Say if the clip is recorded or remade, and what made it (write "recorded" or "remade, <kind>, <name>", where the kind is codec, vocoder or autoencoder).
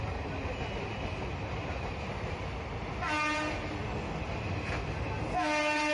recorded